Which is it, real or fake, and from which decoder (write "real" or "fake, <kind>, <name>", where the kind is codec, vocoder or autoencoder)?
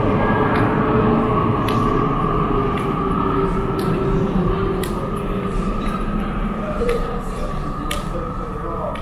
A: real